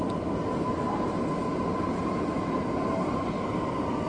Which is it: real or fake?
real